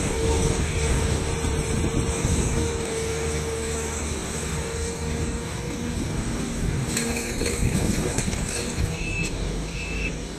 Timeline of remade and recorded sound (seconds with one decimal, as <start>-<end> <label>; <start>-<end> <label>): 0.0-1.3 remade; 1.3-2.1 recorded; 2.1-10.4 remade